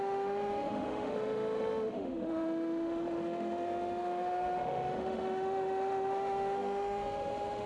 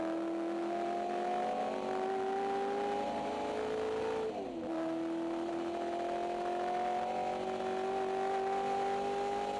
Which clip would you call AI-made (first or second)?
first